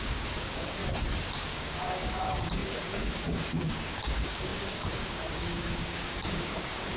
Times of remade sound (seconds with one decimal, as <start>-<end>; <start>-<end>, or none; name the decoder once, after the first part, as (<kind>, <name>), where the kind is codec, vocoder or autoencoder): 0.0-0.8 (codec, DAC); 1.4-7.0